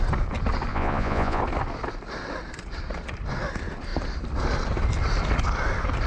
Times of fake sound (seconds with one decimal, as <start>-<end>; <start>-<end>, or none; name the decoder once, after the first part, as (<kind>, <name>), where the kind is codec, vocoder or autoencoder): 0.7-1.4 (vocoder, Vocos)